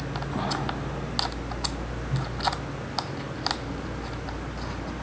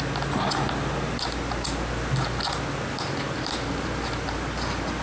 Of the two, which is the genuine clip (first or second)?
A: first